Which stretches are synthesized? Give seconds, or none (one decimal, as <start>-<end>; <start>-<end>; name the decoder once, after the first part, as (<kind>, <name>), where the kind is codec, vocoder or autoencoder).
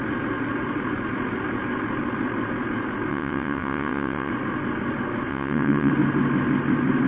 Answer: 3.1-4.3 (vocoder, WaveNeXt); 5.3-5.9